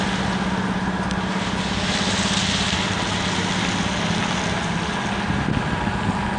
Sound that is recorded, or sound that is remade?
recorded